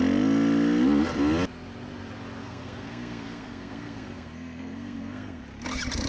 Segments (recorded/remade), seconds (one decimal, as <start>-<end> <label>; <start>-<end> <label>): 0.0-2.4 recorded; 2.4-5.4 remade; 5.4-6.1 recorded